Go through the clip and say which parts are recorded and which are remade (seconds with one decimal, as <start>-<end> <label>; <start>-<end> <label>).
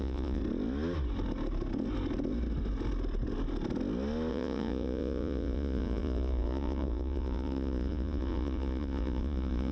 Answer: 0.0-0.4 remade; 0.4-4.3 recorded; 4.3-9.7 remade